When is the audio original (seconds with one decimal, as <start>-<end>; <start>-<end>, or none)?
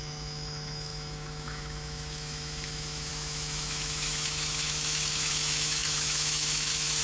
none